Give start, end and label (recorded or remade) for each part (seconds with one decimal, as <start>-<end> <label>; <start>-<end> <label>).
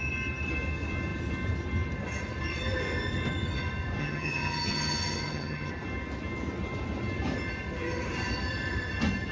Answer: 0.0-4.0 recorded; 4.0-5.7 remade; 5.7-9.3 recorded